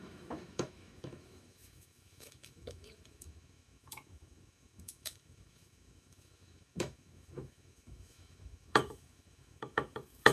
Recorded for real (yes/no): no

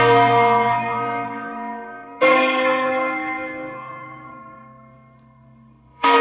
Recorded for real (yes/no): no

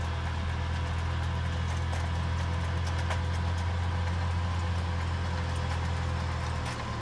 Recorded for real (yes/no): yes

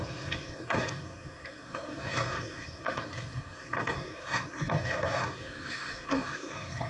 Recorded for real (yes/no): no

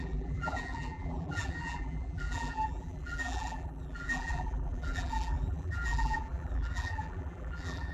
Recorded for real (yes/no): no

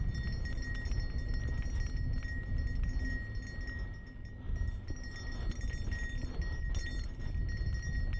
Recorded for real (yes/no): yes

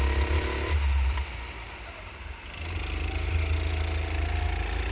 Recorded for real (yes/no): yes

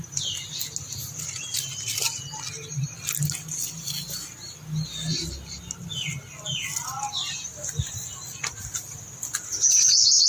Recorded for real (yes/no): yes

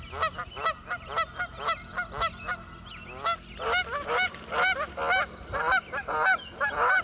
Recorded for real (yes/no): yes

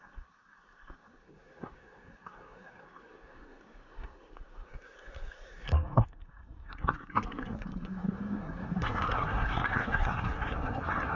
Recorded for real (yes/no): no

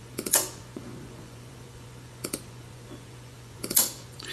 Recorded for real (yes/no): no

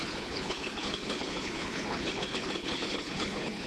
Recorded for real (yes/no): no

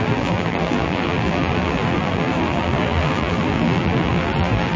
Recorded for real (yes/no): no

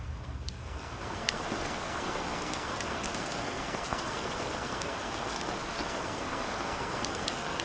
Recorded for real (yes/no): no